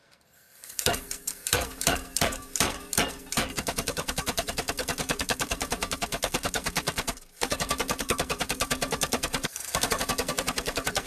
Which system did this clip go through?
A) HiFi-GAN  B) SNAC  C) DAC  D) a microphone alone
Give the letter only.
B